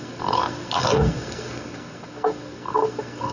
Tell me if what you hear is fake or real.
fake